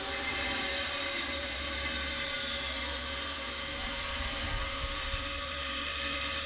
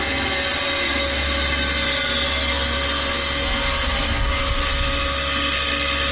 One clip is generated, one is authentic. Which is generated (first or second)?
first